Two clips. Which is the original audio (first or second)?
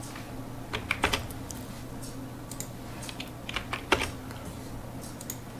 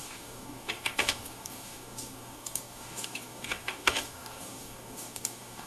first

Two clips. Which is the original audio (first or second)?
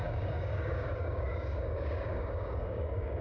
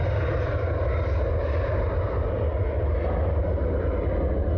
second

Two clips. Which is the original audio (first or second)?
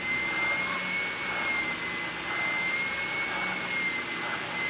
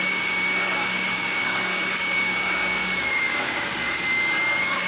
first